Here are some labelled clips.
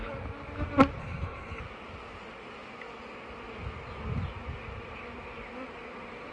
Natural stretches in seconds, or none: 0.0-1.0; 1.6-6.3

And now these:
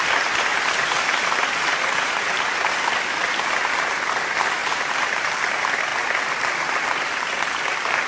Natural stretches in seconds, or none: 0.0-4.6; 5.5-8.1

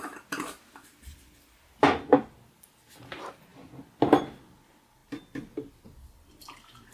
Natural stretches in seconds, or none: 0.0-6.9

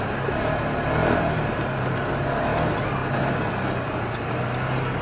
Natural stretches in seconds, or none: 0.0-1.0; 2.1-5.0

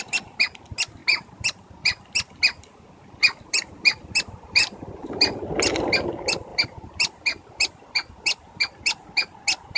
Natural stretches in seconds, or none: 0.0-1.0; 5.4-6.5; 8.8-9.8

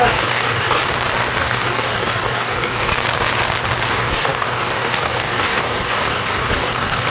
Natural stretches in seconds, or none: 0.8-1.4; 2.9-3.9

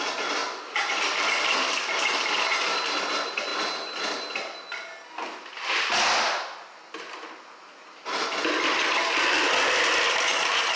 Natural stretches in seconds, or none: 0.0-10.8

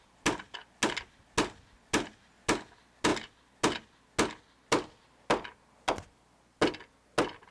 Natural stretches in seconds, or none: 0.0-7.5